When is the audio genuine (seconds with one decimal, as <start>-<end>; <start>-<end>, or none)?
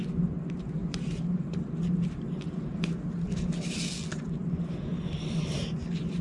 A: 0.0-0.8; 3.8-6.2